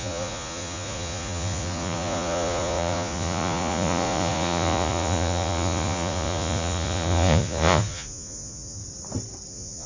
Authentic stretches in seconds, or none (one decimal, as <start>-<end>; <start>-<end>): 8.8-9.5